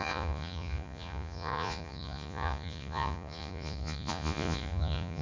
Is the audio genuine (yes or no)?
no